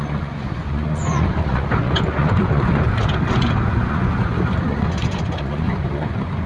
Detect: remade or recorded remade